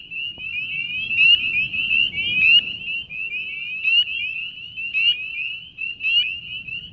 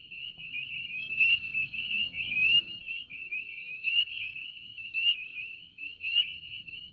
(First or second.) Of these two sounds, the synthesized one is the second